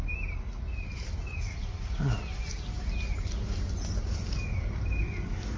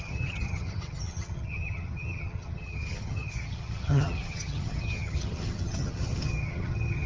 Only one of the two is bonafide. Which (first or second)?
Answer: first